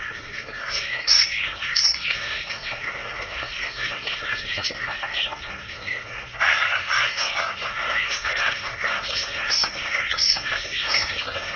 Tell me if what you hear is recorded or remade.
remade